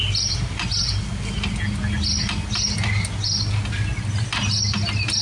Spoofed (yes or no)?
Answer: no